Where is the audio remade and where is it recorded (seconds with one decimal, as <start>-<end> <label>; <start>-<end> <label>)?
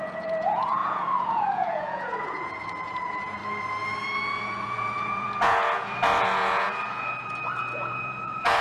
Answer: 0.0-3.4 remade; 3.4-4.4 recorded; 4.4-8.6 remade